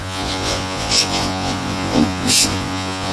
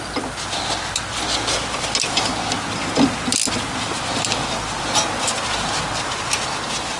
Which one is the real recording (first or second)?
second